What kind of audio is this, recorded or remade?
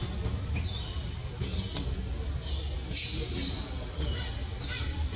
recorded